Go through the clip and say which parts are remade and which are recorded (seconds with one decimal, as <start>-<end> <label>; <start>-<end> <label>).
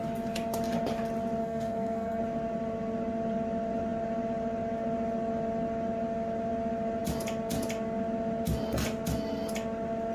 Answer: 0.0-1.4 recorded; 1.4-2.2 remade; 2.2-10.1 recorded